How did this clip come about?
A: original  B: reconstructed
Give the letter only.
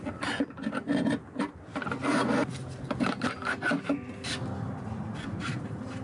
A